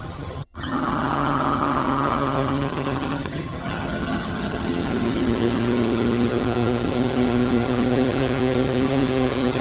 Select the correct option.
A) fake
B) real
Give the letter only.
A